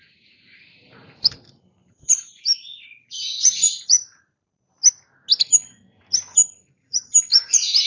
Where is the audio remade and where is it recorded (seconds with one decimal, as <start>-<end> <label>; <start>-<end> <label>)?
0.0-4.8 remade; 4.8-6.3 recorded; 6.3-7.9 remade